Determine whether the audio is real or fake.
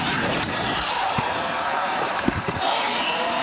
fake